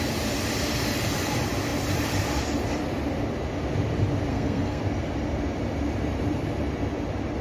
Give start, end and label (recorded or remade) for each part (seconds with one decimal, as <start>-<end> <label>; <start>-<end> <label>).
0.0-4.3 recorded; 4.3-4.8 remade; 4.8-7.4 recorded